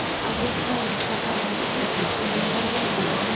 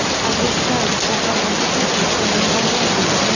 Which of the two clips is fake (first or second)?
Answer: first